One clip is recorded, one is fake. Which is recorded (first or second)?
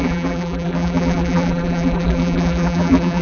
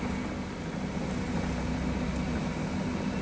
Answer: second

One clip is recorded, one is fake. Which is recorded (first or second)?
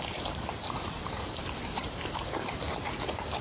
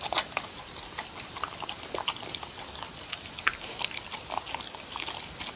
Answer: second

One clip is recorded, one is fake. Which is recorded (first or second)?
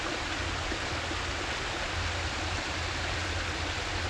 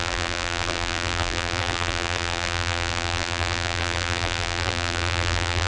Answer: first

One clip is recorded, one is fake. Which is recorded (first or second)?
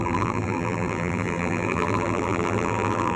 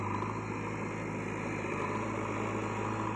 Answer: second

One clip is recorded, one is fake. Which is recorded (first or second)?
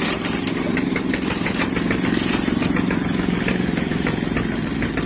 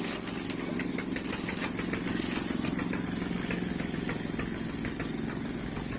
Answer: second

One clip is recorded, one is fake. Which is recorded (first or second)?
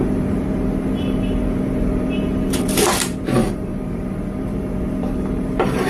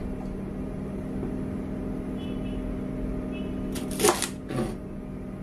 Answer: second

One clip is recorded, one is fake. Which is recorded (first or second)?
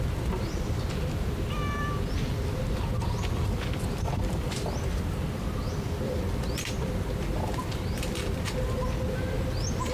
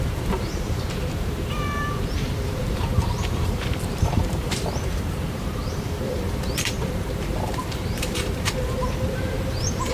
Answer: first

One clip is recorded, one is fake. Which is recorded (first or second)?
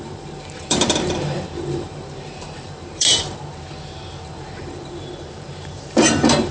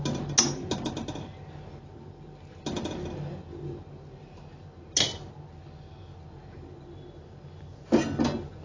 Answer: second